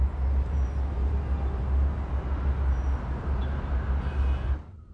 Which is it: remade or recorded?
recorded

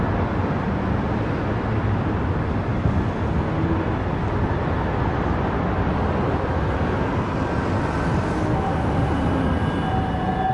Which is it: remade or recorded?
recorded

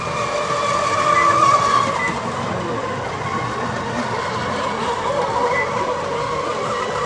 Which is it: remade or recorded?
recorded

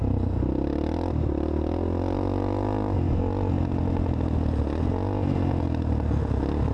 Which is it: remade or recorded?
recorded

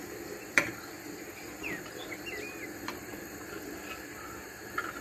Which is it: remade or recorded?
remade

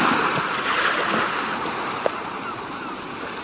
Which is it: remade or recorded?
recorded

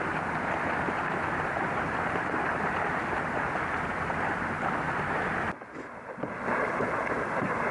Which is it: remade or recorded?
recorded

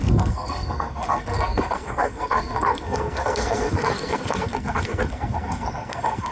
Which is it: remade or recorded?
remade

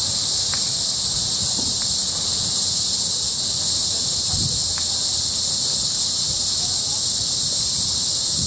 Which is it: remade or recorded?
recorded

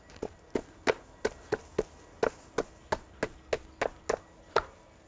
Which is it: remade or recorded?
recorded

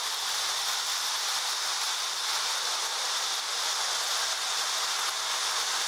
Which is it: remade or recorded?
recorded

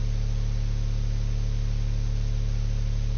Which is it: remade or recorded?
recorded